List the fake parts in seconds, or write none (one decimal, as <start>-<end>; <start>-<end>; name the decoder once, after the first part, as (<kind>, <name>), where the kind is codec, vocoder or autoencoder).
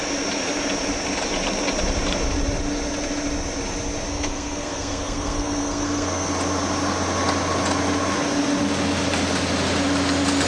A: 4.1-6.3 (codec, SNAC)